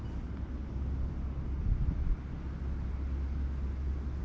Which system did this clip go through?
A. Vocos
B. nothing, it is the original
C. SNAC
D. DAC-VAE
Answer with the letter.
B